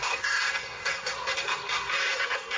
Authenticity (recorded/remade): remade